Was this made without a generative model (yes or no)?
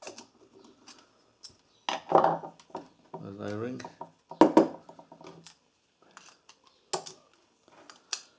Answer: yes